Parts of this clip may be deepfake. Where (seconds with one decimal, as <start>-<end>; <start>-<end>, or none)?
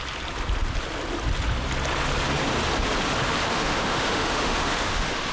3.5-5.3